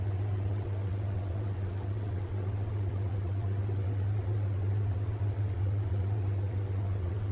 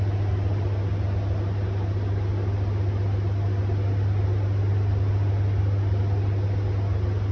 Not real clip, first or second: first